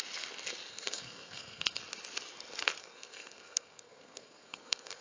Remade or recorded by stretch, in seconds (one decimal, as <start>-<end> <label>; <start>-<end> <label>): 0.0-0.7 recorded; 0.7-1.8 remade; 1.8-2.8 recorded; 2.8-5.0 remade